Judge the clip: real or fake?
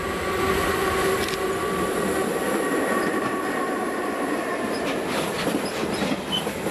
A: real